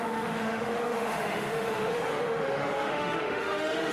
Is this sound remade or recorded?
remade